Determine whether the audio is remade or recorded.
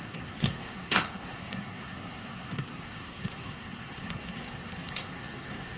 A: remade